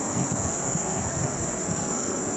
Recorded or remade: remade